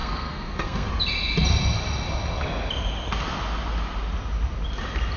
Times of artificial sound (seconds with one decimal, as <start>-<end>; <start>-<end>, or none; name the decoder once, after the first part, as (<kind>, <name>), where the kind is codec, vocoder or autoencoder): 0.0-0.9 (codec, SNAC)